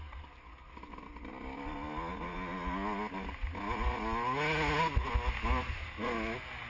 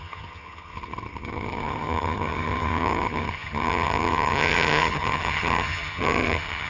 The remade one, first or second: second